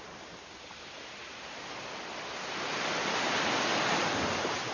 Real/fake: real